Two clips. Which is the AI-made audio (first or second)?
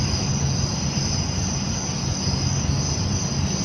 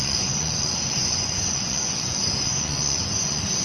second